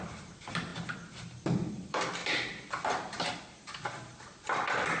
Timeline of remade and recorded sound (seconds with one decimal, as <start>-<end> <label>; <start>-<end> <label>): 0.0-0.7 remade; 0.7-1.7 recorded; 1.7-2.2 remade; 2.2-3.4 recorded; 3.4-4.1 remade; 4.1-5.0 recorded